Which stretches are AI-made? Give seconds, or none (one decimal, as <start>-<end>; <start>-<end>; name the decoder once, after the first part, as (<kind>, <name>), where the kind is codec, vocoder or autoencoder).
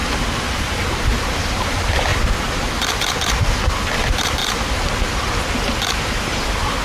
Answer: none